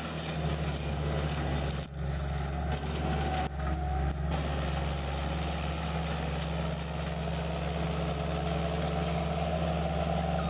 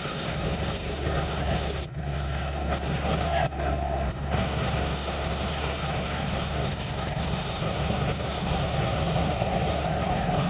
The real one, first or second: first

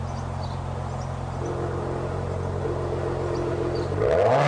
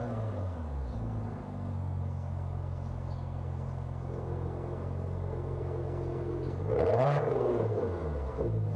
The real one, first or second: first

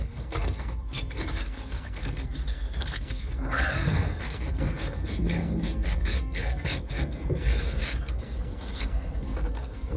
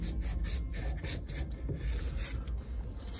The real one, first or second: second